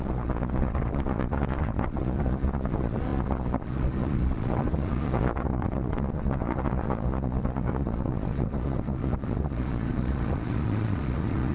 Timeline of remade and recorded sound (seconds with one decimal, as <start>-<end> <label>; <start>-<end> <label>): 0.0-11.5 remade